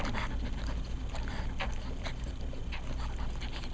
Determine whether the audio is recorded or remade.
recorded